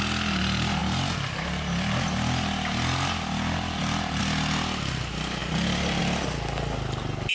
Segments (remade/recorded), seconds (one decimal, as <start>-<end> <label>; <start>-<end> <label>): 0.0-5.4 recorded; 5.4-6.0 remade; 6.0-7.3 recorded